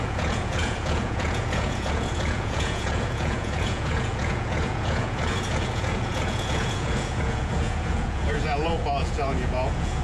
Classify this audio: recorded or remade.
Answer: remade